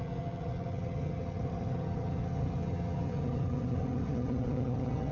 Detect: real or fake fake